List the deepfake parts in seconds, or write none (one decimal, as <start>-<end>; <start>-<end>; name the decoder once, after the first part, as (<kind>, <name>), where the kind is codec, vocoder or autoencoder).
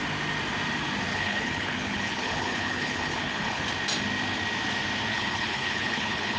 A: 1.1-3.6 (codec, HILCodec); 5.1-6.4